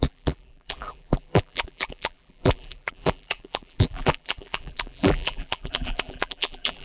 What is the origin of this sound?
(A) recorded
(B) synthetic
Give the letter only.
B